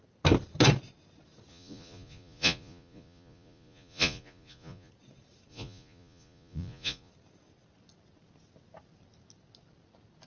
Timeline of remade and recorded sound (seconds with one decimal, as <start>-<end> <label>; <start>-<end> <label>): 0.0-1.5 recorded; 1.5-4.9 remade; 4.9-5.5 recorded; 5.5-7.1 remade; 7.1-10.3 recorded